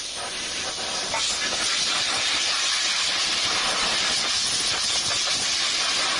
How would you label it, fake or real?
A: real